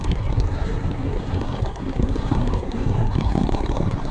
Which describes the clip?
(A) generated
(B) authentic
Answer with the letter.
A